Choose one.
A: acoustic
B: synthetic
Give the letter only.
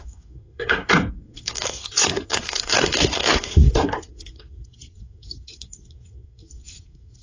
B